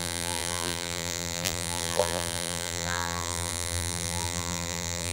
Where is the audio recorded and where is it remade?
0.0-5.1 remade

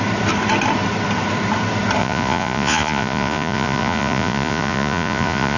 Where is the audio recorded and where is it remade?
0.0-2.0 recorded; 2.0-5.6 remade

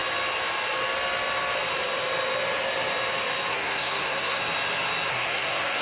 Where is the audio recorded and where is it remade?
0.0-3.5 recorded; 3.5-4.4 remade; 4.4-5.1 recorded; 5.1-5.8 remade